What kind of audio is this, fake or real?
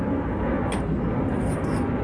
real